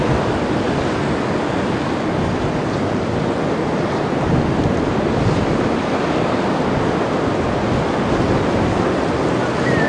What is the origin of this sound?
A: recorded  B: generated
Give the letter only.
A